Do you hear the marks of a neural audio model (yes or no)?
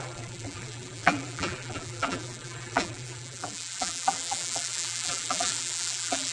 yes